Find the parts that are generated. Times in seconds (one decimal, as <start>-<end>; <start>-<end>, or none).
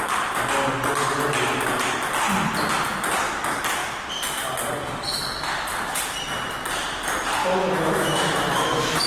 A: 7.6-9.1